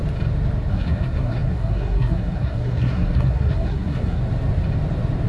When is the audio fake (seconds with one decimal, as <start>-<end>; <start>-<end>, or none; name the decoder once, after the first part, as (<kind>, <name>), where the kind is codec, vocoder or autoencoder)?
0.7-4.2 (codec, SNAC)